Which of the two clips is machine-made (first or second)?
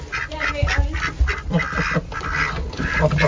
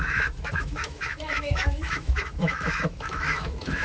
second